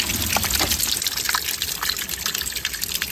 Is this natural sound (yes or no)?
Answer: yes